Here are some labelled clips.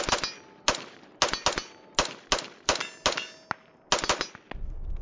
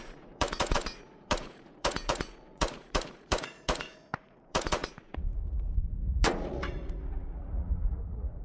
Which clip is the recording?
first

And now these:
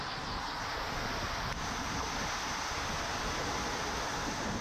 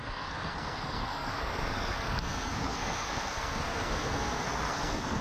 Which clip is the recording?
first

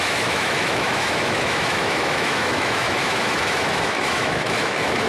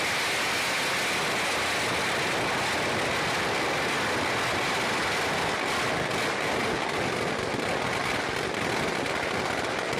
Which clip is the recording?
second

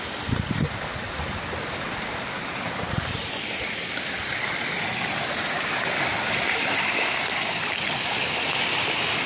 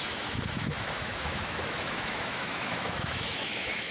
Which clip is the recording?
first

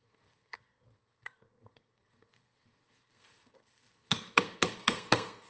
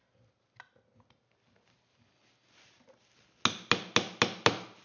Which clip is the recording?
second